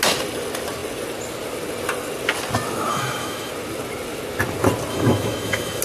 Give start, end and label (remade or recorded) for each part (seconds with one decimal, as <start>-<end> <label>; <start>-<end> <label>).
0.0-2.9 recorded; 2.9-3.5 remade; 3.5-4.9 recorded; 4.9-5.8 remade